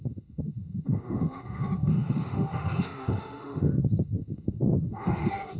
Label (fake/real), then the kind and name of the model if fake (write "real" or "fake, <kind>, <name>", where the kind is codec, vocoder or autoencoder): fake, autoencoder, DAC-VAE